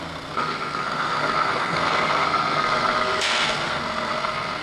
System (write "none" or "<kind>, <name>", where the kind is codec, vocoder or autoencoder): codec, SNAC